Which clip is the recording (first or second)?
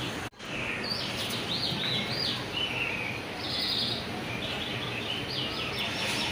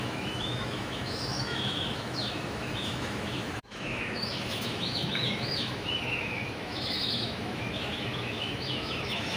first